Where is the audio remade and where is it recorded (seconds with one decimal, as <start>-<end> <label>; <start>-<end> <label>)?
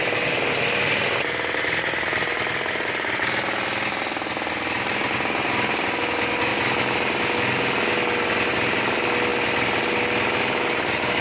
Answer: 0.0-11.2 recorded